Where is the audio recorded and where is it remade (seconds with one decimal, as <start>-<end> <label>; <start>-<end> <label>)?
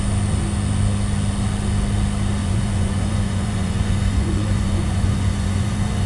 0.0-2.4 recorded; 2.4-6.1 remade